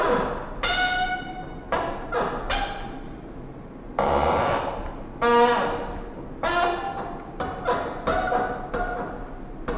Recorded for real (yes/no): yes